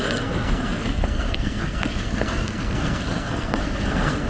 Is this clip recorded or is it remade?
remade